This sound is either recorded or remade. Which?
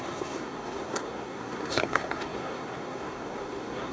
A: remade